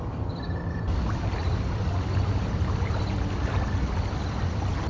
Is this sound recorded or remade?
recorded